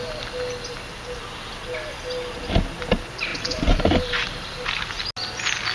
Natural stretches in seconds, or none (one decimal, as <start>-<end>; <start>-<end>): 0.0-3.3; 5.0-5.7